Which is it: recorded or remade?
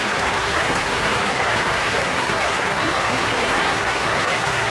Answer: remade